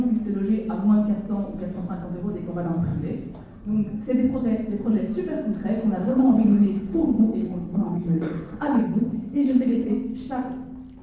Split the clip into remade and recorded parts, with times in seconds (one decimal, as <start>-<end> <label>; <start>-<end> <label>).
0.0-6.1 recorded; 6.1-9.9 remade; 9.9-11.0 recorded